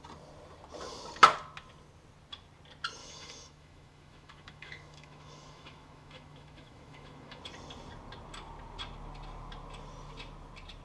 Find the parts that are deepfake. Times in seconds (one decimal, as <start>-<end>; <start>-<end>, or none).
3.0-7.4